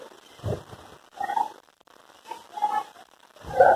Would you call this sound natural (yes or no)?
yes